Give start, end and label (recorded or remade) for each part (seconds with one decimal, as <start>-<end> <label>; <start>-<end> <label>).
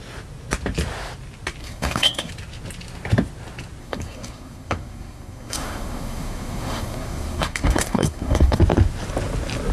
0.0-1.6 recorded; 1.6-2.3 remade; 2.3-3.8 recorded; 3.8-8.6 remade; 8.6-9.7 recorded